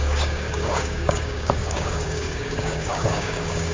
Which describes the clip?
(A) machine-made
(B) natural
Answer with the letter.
A